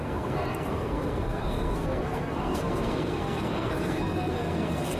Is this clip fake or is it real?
fake